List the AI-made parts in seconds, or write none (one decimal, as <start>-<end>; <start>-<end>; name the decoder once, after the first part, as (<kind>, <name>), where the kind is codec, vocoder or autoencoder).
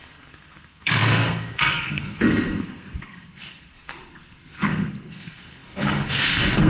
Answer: 0.0-6.7 (codec, SNAC)